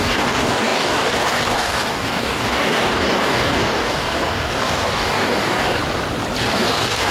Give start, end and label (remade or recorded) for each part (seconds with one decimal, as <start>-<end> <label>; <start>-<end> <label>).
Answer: 0.0-5.8 remade; 5.8-6.4 recorded; 6.4-7.1 remade